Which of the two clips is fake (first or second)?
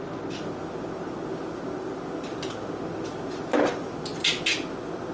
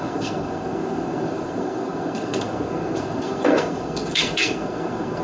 second